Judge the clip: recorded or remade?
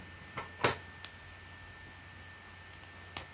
recorded